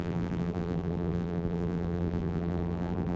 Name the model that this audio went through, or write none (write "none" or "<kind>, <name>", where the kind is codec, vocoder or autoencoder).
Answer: vocoder, BigVGAN v2